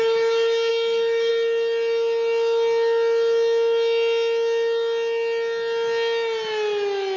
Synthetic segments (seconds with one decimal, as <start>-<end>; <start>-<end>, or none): 0.7-1.3